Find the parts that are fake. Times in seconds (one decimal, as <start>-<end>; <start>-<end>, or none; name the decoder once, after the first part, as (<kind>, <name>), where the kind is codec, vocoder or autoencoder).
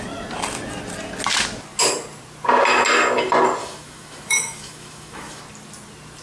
3.6-5.4 (autoencoder, DAC-VAE)